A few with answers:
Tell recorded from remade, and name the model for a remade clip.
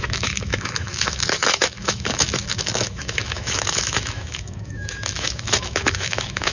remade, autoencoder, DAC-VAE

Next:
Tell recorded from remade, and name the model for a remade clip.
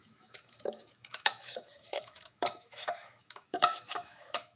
remade, autoencoder, DAC-VAE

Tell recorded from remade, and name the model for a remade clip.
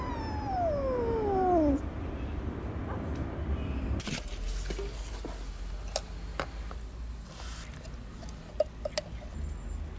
recorded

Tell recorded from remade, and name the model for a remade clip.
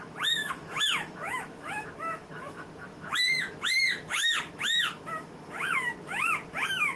remade, autoencoder, DAC-VAE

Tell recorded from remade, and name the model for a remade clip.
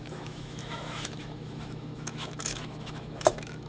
remade, autoencoder, DAC-VAE